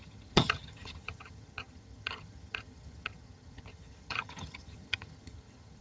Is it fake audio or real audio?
fake